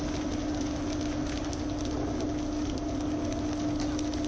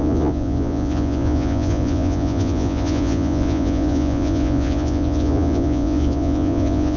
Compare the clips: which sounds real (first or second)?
first